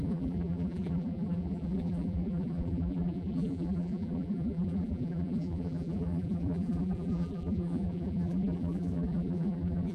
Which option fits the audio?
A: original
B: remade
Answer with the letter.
B